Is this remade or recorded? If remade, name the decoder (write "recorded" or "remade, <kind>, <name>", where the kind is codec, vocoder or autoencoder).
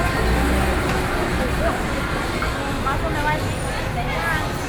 recorded